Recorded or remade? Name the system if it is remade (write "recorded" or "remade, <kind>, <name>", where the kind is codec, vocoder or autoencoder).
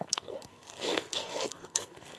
remade, codec, SNAC